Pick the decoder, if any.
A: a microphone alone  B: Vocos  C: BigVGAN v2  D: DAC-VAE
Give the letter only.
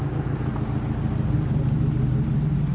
A